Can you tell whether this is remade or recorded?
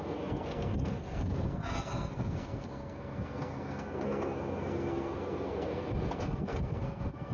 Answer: remade